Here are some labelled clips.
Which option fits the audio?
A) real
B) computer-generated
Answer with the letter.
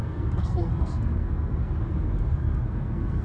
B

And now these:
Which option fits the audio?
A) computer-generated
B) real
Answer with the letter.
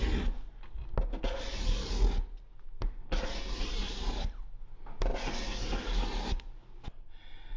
B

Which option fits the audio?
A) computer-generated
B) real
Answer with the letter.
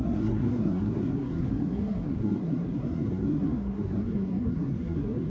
A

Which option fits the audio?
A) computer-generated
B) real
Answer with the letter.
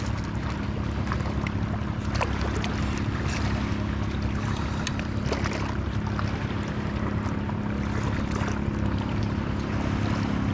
B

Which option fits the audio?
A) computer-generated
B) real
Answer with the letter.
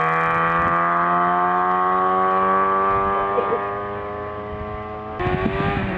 B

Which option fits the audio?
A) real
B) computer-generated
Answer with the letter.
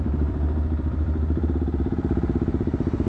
B